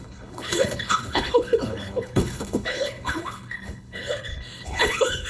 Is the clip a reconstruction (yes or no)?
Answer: yes